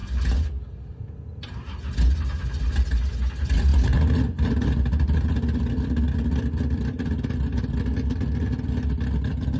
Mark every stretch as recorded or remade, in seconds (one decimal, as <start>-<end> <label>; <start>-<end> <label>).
0.0-9.6 recorded